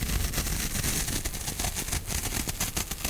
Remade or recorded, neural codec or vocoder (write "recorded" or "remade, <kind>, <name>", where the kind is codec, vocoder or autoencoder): recorded